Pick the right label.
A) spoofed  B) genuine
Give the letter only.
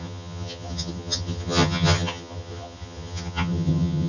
A